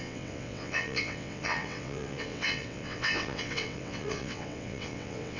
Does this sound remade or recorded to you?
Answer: remade